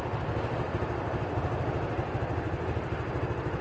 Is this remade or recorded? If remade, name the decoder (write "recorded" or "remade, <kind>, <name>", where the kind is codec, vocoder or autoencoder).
recorded